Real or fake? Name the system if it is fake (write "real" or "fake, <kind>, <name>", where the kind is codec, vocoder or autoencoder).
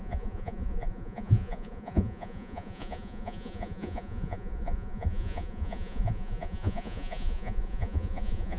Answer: fake, vocoder, Vocos